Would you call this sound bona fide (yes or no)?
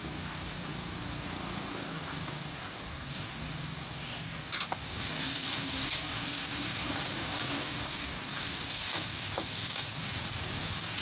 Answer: no